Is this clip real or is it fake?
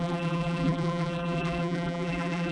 fake